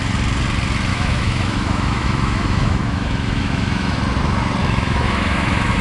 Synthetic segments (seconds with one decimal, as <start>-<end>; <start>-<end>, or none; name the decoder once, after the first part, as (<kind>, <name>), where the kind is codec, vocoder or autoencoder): 0.9-4.0 (autoencoder, DAC-VAE); 4.6-5.8